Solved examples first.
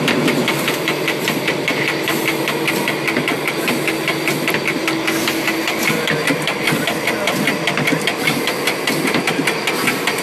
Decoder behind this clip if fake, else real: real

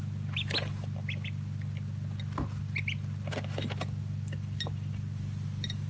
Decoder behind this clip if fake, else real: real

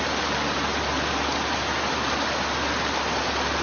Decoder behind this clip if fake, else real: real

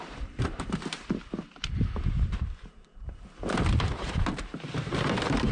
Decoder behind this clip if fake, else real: fake, vocoder, BigVGAN v2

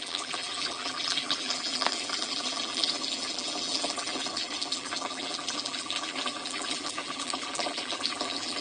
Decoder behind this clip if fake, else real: fake, vocoder, BigVGAN v2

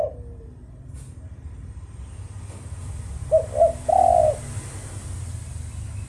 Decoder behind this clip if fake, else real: real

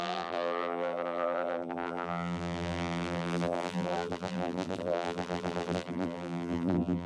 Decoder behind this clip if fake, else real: fake, vocoder, BigVGAN v2